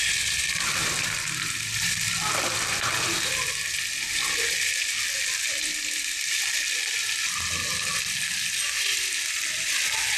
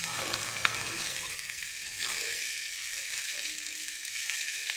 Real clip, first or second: first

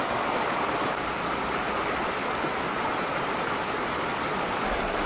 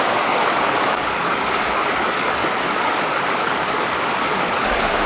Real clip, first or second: first